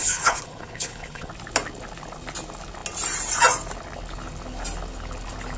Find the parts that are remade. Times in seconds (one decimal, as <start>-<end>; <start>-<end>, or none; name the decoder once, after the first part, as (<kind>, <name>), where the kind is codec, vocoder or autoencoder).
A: 0.0-1.3 (codec, HILCodec)